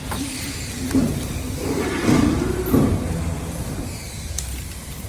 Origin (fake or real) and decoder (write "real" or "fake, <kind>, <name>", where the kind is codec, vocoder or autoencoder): fake, vocoder, BigVGAN v2